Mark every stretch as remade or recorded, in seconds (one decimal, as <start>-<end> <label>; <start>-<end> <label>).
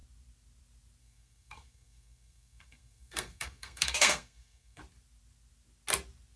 0.0-1.0 recorded; 1.0-4.8 remade; 4.8-6.4 recorded